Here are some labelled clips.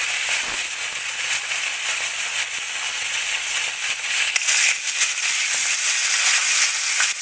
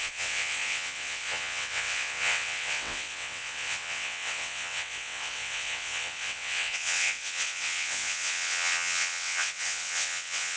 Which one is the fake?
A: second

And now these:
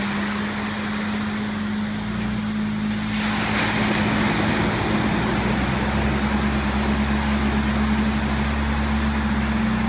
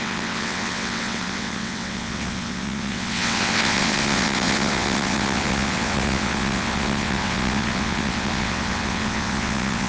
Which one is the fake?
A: second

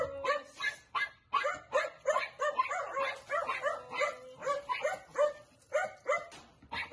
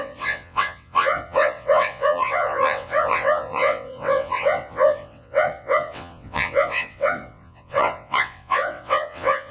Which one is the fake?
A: second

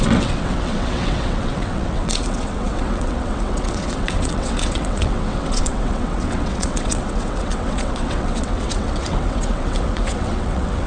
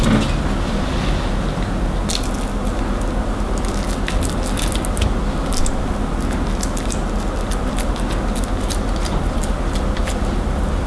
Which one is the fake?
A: first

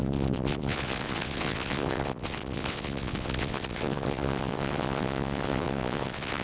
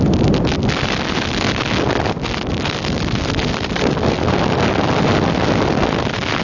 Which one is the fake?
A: first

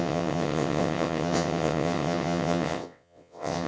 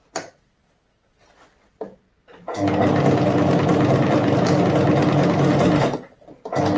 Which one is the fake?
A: first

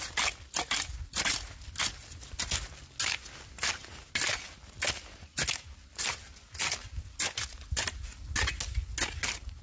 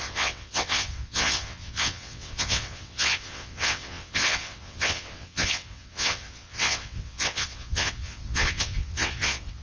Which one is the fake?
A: second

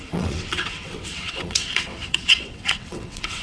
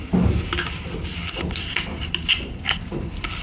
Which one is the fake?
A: first